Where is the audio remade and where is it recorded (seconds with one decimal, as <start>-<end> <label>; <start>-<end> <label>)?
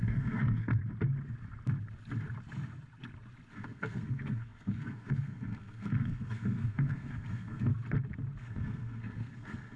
0.0-0.8 remade; 0.8-3.5 recorded; 3.5-7.7 remade; 7.7-8.4 recorded; 8.4-9.8 remade